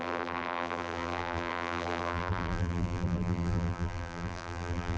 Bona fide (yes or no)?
no